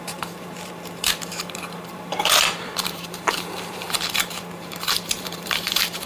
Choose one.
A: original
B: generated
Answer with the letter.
B